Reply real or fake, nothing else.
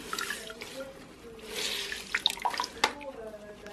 real